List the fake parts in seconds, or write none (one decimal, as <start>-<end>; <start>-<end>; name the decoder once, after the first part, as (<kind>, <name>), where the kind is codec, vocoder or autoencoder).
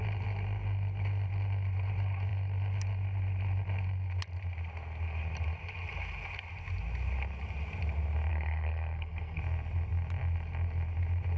8.3-9.4 (codec, SNAC)